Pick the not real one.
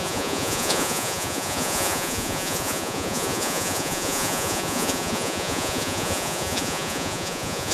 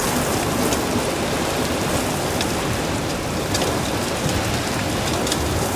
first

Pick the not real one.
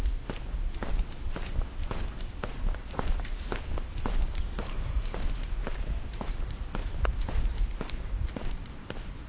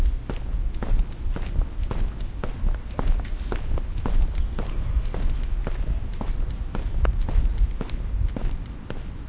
first